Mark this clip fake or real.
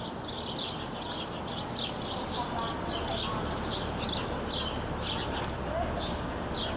real